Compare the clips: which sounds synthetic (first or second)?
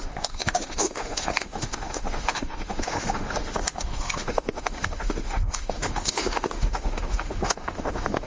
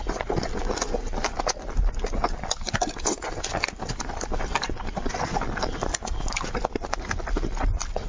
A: first